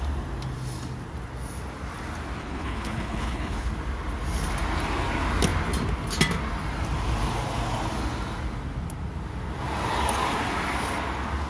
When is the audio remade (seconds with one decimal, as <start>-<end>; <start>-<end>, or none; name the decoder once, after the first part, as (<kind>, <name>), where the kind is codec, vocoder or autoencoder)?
2.4-3.7 (codec, HILCodec)